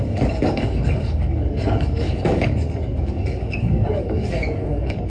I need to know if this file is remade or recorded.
remade